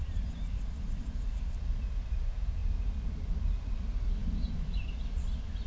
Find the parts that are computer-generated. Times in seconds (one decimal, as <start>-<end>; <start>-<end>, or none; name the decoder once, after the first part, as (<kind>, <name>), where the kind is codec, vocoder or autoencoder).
none